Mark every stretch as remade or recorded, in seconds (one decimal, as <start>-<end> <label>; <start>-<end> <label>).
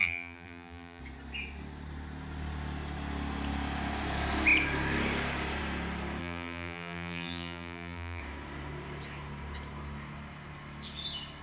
0.0-1.0 remade; 1.0-6.2 recorded; 6.2-8.2 remade; 8.2-11.4 recorded